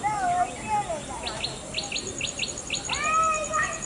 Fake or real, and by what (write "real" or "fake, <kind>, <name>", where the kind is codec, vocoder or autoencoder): real